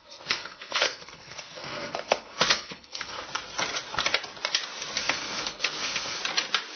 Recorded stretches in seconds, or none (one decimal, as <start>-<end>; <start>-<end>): 3.2-5.0; 6.2-6.8

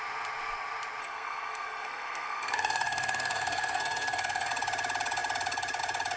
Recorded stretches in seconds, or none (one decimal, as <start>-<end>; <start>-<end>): 0.0-1.0; 4.5-6.2

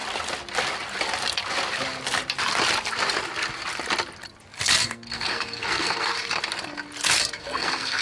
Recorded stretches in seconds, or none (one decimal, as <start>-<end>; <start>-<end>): 0.0-4.8; 6.1-7.4

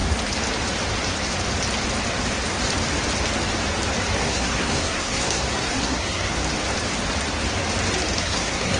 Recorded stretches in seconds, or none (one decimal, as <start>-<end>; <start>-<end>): 0.0-4.2; 6.3-8.2

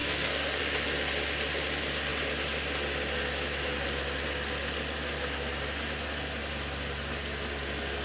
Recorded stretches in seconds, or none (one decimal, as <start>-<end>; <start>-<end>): 0.6-8.0

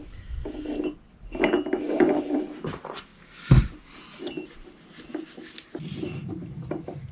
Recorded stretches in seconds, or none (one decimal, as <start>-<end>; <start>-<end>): 0.0-7.1

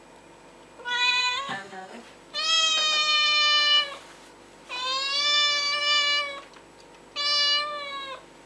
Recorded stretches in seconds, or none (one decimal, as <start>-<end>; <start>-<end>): 0.0-1.2; 2.0-8.5

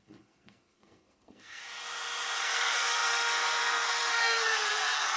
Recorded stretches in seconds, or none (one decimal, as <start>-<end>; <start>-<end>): 1.6-2.4